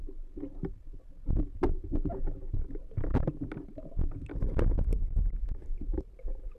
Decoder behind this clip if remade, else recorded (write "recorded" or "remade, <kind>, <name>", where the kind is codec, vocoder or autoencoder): recorded